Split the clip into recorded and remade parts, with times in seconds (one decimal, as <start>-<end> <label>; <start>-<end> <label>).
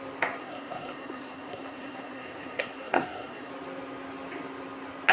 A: 0.0-0.4 recorded; 0.4-3.5 remade; 3.5-5.1 recorded